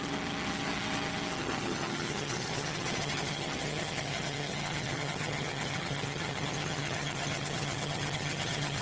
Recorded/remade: remade